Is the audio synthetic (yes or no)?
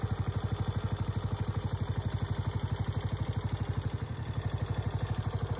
no